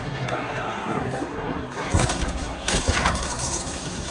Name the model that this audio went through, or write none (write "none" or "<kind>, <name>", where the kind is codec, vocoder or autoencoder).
codec, SNAC